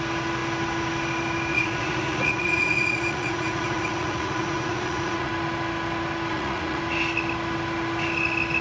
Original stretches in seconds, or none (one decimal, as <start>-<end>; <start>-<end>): 0.0-1.5; 5.3-6.3; 6.8-8.6